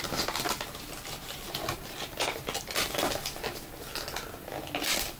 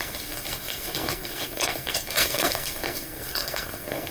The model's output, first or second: second